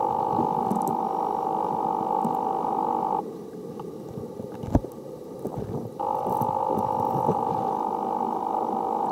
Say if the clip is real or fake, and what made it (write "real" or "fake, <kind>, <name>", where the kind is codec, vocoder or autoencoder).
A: real